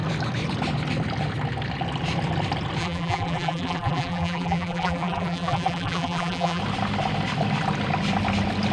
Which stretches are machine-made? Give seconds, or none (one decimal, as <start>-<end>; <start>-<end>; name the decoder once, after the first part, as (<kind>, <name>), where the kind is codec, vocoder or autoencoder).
2.8-6.6 (vocoder, BigVGAN v2)